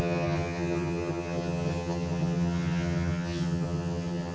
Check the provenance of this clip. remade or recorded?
remade